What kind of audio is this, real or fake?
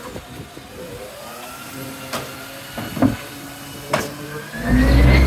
real